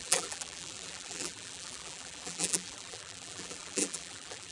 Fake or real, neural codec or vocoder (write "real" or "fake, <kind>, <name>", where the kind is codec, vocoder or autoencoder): fake, vocoder, BigVGAN v2